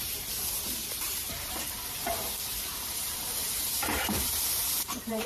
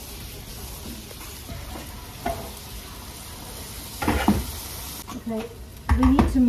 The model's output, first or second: first